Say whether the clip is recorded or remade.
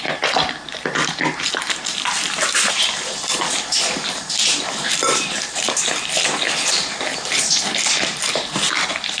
recorded